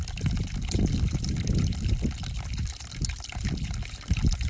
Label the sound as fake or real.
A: real